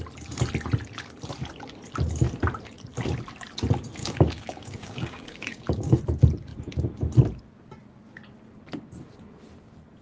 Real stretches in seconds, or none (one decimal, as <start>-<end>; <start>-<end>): 0.0-4.0; 6.0-10.0